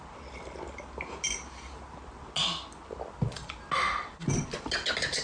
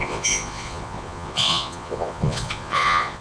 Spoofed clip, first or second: second